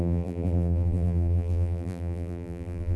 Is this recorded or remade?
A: remade